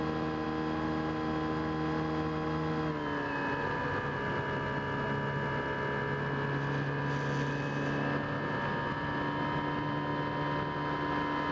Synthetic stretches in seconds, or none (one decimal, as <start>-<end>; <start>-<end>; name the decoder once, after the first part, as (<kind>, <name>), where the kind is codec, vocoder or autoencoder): none